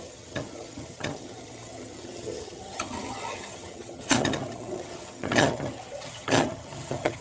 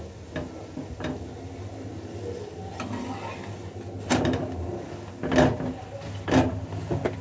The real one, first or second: second